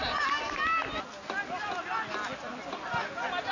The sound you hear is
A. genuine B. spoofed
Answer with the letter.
A